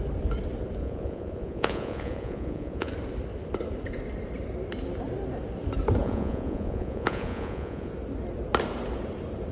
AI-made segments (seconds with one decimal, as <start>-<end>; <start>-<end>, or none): 0.8-2.9; 6.0-7.9